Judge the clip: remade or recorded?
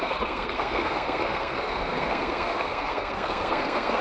remade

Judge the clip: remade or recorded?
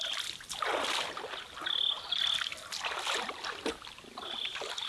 recorded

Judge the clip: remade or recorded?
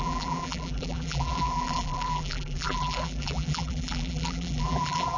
remade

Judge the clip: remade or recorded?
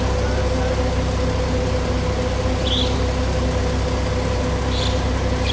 recorded